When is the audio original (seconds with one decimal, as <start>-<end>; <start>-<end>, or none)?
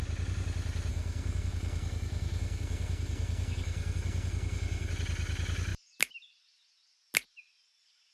0.0-0.9; 4.9-8.1